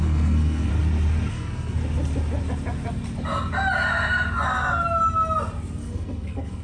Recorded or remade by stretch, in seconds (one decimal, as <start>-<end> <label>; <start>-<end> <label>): 0.0-0.7 remade; 0.7-1.3 recorded; 1.3-1.8 remade; 1.8-5.8 recorded; 5.8-6.6 remade

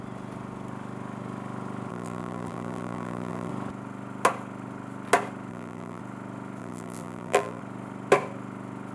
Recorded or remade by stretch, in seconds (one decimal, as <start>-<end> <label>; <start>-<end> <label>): 0.0-1.9 recorded; 1.9-3.5 remade; 3.5-5.5 recorded; 5.5-6.0 remade; 6.0-6.6 recorded; 6.6-7.6 remade; 7.6-8.9 recorded

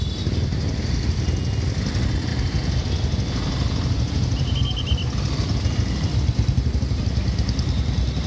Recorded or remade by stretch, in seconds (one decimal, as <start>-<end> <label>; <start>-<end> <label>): 0.0-8.3 recorded

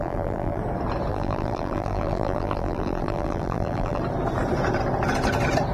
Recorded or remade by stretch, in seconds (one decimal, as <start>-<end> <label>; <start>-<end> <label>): 0.0-0.6 remade; 0.6-1.1 recorded; 1.1-4.0 remade; 4.0-5.7 recorded

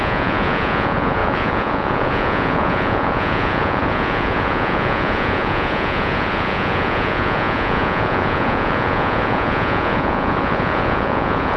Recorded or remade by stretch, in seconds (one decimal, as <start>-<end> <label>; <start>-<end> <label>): 0.0-11.6 remade

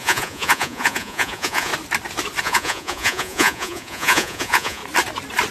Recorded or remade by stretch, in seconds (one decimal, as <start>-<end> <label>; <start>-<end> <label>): 0.0-1.7 remade; 1.7-2.4 recorded; 2.4-4.8 remade; 4.8-5.5 recorded